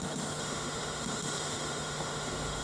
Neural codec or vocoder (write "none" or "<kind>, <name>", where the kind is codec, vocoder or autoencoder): autoencoder, DAC-VAE